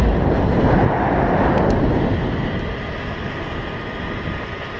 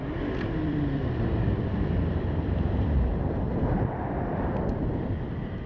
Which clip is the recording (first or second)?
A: first